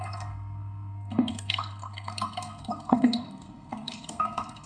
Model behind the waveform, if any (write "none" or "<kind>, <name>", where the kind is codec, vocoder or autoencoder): codec, SNAC